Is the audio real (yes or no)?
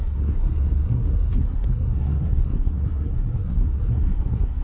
no